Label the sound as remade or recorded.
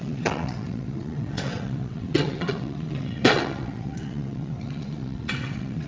remade